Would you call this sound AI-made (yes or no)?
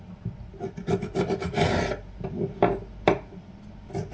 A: no